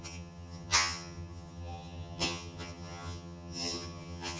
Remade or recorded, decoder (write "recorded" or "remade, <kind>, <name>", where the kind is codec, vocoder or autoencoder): remade, vocoder, HiFi-GAN